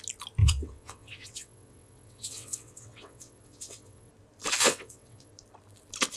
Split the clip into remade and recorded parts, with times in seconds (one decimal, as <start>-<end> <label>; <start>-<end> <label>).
0.0-0.4 recorded; 0.4-4.1 remade; 4.1-4.6 recorded; 4.6-5.3 remade; 5.3-6.2 recorded